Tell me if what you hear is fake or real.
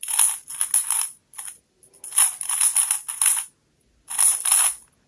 real